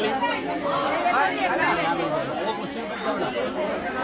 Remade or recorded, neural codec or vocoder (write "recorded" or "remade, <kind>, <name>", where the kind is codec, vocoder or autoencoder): recorded